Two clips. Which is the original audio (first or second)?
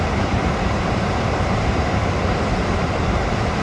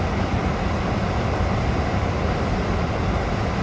second